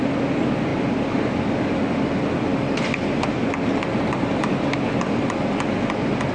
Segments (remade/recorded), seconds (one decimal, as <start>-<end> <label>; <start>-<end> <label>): 0.0-6.3 recorded